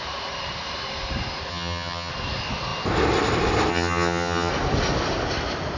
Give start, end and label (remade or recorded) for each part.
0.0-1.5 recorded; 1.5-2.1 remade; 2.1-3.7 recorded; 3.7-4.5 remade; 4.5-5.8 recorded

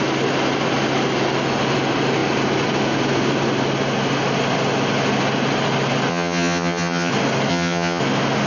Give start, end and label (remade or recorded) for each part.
0.0-6.1 recorded; 6.1-7.1 remade; 7.1-7.5 recorded; 7.5-8.0 remade; 8.0-8.5 recorded

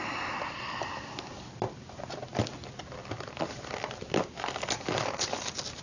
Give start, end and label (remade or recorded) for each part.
0.0-5.8 recorded

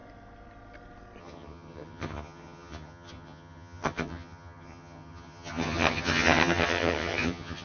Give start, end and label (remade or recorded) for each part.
0.0-1.2 recorded; 1.2-7.6 remade

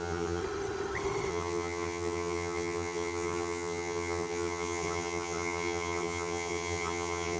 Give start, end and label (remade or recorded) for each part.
0.0-0.4 remade; 0.4-1.3 recorded; 1.3-7.4 remade